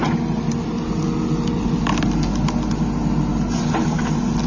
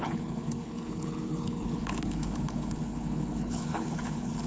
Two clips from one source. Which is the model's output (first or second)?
second